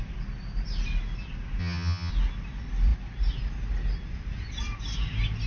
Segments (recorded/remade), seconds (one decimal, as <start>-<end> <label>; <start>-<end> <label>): 0.0-1.6 recorded; 1.6-2.1 remade; 2.1-5.5 recorded